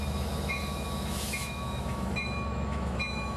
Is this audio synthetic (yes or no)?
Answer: yes